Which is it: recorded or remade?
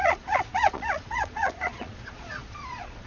remade